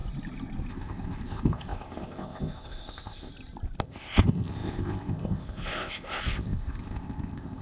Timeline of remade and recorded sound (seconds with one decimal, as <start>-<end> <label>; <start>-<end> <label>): 0.0-0.7 recorded; 0.7-3.3 remade; 3.3-3.8 recorded; 3.8-7.6 remade